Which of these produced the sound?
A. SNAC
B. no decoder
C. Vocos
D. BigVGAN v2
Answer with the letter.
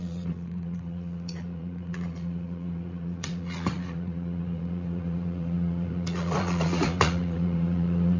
C